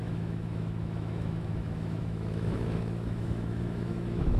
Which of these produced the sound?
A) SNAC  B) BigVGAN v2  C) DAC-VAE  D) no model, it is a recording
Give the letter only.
C